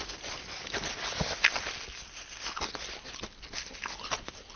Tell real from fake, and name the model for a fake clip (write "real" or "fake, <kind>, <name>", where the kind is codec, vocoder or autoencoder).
real